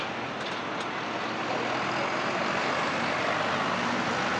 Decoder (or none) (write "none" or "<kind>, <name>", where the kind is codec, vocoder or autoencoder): none